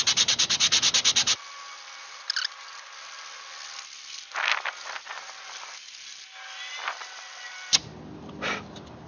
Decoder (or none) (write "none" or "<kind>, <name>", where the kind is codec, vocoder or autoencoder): none